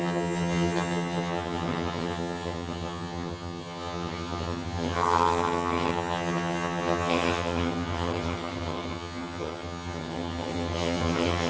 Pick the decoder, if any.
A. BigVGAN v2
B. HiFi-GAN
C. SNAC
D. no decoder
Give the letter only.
B